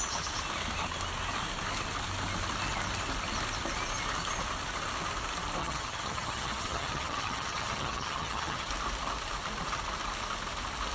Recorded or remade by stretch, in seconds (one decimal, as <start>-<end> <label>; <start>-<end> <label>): 0.0-5.6 recorded; 5.6-8.7 remade; 8.7-10.9 recorded

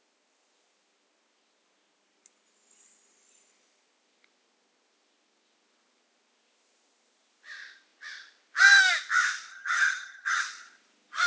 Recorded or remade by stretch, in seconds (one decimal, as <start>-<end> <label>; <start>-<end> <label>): 0.0-9.5 recorded; 9.5-10.4 remade; 10.4-11.3 recorded

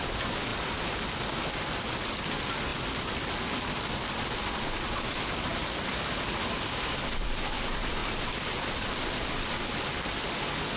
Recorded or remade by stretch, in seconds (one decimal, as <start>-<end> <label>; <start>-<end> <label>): 0.0-10.8 recorded

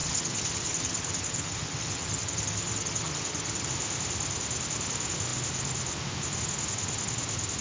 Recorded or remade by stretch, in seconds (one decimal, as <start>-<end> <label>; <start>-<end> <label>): 0.0-3.7 remade; 3.7-7.6 recorded